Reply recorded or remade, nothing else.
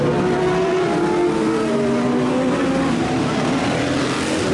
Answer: recorded